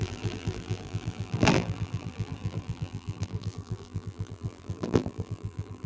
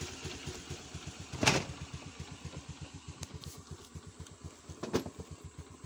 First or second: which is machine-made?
first